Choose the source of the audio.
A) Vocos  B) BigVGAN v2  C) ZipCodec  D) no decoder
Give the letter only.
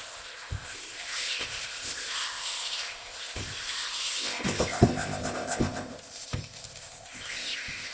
C